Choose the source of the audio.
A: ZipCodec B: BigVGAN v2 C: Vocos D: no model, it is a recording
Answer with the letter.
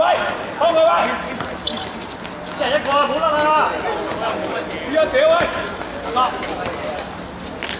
D